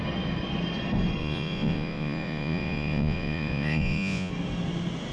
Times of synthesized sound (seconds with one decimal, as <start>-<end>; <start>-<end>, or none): 1.2-4.3